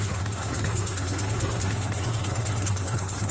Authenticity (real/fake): fake